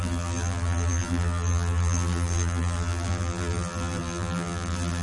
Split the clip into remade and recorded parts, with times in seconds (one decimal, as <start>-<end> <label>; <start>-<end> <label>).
0.0-5.0 remade